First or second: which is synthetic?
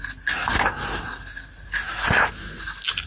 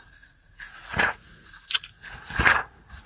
second